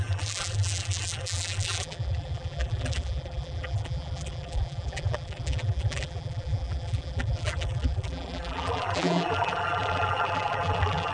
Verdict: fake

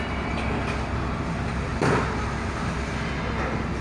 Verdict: real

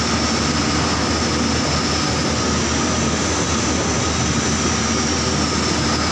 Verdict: real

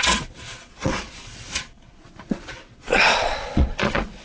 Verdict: fake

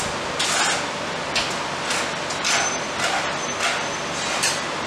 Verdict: real